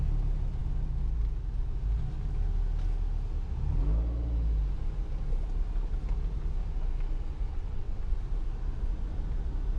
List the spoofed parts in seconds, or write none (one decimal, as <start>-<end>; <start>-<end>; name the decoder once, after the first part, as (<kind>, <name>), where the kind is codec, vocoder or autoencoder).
7.5-8.2 (vocoder, WaveNeXt)